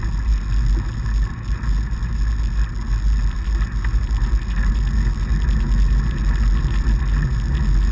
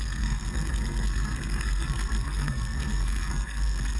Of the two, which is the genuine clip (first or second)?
first